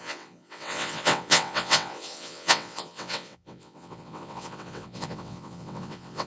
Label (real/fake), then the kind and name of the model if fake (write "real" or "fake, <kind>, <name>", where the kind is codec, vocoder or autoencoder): fake, vocoder, WaveNeXt